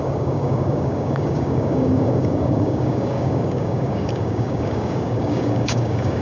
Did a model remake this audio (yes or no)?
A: yes